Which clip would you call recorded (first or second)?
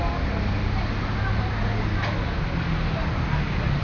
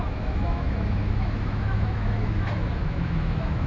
first